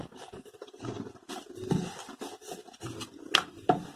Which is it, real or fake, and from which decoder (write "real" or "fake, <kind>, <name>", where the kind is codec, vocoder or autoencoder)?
fake, vocoder, BigVGAN v2